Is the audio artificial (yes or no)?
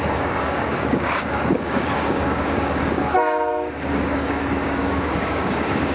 yes